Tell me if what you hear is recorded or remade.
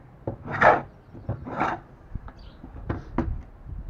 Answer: recorded